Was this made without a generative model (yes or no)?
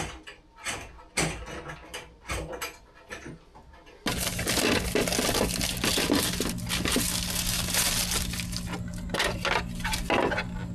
yes